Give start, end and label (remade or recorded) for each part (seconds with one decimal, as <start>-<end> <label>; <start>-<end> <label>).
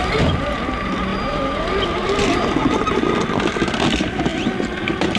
0.0-5.2 recorded